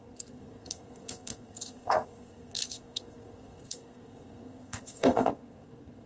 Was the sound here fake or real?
fake